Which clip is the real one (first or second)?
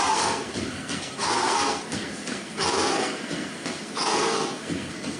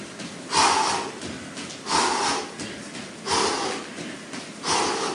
second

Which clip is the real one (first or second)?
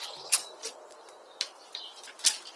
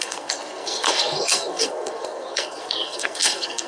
first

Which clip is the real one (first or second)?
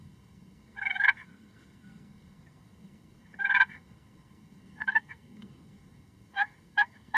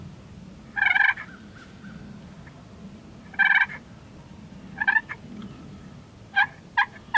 second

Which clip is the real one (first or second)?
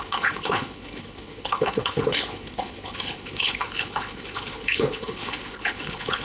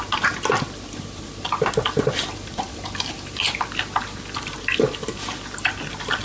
second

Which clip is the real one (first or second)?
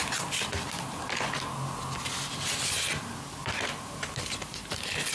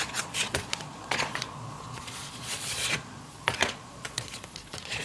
first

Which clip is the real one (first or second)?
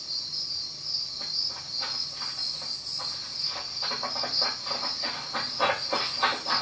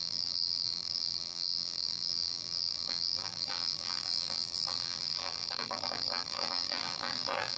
first